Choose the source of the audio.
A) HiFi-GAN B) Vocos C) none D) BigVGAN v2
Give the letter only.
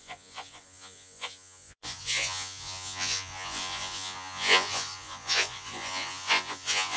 B